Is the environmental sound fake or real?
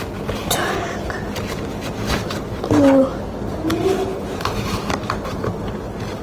real